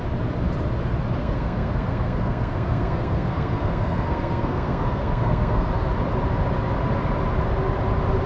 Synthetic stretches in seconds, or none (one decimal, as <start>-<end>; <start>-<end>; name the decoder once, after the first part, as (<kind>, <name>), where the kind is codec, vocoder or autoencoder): 1.2-5.7 (codec, SNAC)